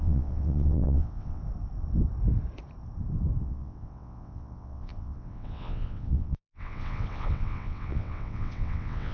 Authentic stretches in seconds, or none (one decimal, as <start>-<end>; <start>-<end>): 1.4-3.4